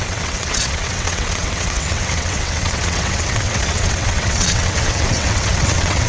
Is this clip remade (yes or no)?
yes